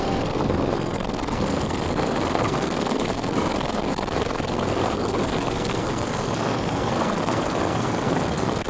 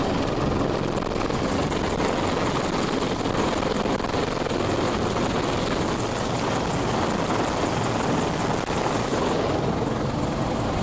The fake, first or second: first